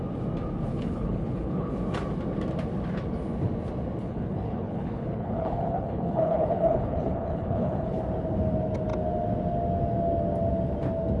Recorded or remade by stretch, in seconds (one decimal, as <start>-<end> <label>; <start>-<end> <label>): 0.0-0.7 recorded; 0.7-1.7 remade; 1.7-4.0 recorded; 4.0-8.0 remade; 8.0-11.2 recorded